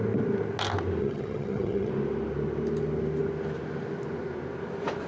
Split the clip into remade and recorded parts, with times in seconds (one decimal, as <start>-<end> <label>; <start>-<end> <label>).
0.0-1.0 recorded; 1.0-1.9 remade; 1.9-5.1 recorded